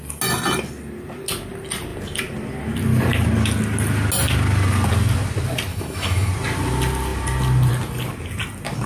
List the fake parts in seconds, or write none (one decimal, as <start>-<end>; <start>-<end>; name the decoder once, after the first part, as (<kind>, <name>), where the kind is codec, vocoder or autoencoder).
5.7-6.3 (autoencoder, DAC-VAE)